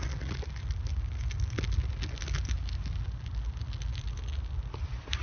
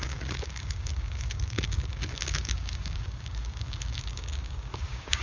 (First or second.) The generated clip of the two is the second